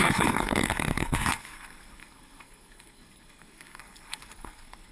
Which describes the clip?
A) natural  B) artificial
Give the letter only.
B